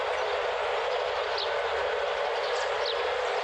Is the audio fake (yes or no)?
no